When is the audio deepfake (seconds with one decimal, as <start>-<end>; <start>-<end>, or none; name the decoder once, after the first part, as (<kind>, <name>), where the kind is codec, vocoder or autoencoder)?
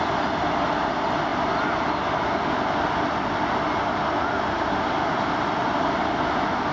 none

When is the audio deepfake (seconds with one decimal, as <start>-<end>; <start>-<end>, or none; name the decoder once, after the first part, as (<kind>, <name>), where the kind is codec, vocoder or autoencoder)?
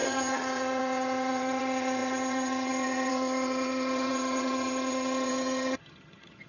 0.0-6.5 (vocoder, HiFi-GAN)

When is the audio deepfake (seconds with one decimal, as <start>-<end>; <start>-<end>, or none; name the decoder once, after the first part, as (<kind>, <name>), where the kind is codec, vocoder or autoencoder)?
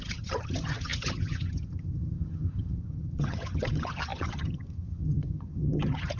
0.0-6.2 (vocoder, HiFi-GAN)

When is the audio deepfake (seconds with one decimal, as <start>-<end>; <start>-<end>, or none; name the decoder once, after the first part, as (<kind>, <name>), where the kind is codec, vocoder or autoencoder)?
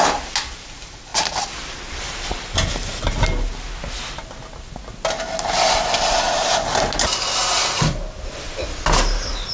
none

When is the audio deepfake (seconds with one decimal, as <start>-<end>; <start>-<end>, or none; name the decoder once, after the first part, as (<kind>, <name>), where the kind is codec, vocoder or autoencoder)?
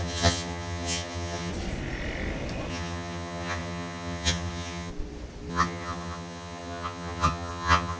0.0-1.5 (vocoder, HiFi-GAN); 2.7-4.9; 5.5-8.0